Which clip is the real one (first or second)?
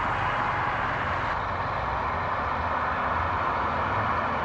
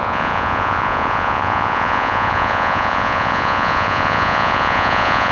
first